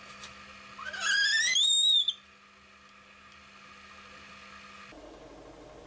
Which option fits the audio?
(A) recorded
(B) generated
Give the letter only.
A